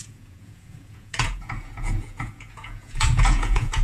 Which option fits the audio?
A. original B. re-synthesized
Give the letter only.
B